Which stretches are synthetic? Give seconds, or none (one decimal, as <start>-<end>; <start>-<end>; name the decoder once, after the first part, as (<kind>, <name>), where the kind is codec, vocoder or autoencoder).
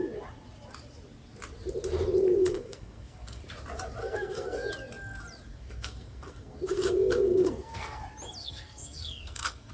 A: 2.4-3.4 (codec, SNAC); 4.0-4.7; 5.5-8.0; 8.4-9.7